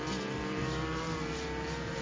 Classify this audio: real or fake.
fake